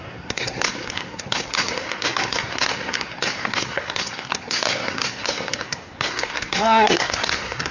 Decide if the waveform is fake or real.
fake